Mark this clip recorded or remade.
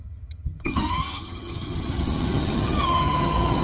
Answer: remade